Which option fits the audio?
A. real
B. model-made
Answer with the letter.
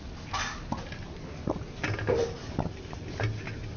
A